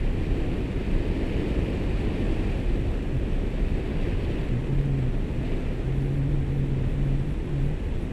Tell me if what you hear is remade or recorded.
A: recorded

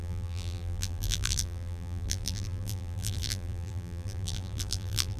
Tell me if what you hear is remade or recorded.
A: remade